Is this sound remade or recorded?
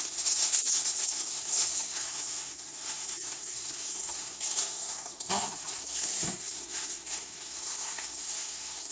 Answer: remade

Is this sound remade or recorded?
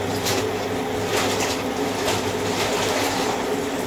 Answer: recorded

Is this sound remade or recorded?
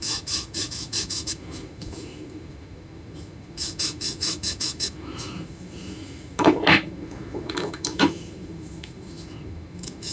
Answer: remade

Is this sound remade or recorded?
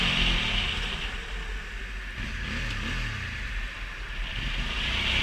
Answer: recorded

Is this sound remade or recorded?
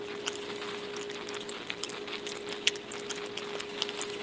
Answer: recorded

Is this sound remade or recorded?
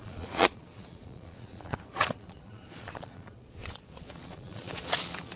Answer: remade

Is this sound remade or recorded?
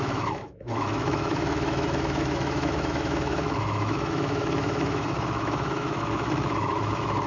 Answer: remade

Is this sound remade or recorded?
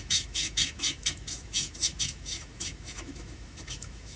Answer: remade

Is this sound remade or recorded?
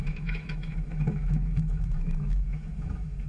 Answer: remade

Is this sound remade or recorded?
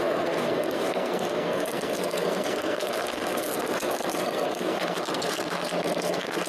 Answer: remade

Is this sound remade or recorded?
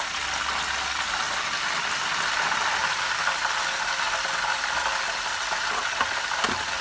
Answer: recorded